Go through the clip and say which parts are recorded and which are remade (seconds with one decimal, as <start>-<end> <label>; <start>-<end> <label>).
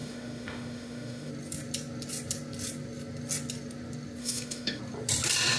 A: 0.0-1.3 remade; 1.3-4.2 recorded; 4.2-4.8 remade; 4.8-5.6 recorded